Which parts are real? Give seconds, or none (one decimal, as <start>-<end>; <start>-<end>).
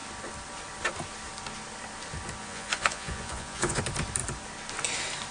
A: 0.0-2.4; 3.8-5.3